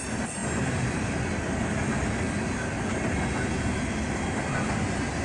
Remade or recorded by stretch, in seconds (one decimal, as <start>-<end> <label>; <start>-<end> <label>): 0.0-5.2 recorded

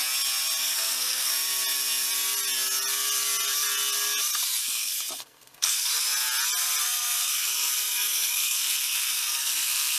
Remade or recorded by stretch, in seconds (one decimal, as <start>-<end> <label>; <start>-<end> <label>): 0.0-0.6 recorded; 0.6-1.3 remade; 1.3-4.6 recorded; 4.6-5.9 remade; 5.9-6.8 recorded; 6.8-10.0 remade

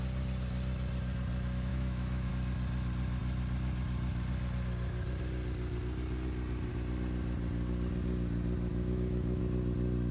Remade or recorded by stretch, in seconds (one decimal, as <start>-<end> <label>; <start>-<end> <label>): 0.0-1.7 recorded; 1.7-2.3 remade; 2.3-8.7 recorded; 8.7-9.4 remade; 9.4-10.1 recorded